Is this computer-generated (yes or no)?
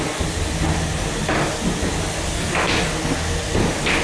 no